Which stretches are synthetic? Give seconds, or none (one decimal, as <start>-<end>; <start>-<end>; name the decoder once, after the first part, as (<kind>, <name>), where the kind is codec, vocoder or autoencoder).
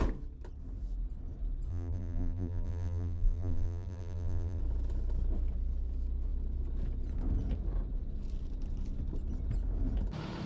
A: 1.7-4.6 (vocoder, BigVGAN v2)